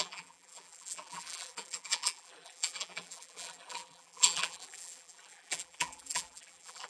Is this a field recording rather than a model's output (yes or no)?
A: no